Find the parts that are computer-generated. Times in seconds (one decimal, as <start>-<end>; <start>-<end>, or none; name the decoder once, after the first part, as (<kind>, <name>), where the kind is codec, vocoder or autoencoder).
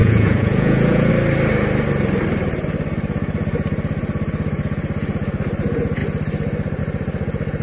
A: 0.0-1.1 (vocoder, Vocos)